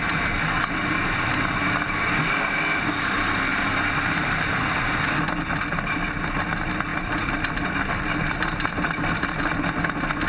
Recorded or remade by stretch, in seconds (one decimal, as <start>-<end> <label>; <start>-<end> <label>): 0.0-3.5 recorded; 3.5-4.8 remade; 4.8-6.9 recorded; 6.9-7.5 remade; 7.5-10.3 recorded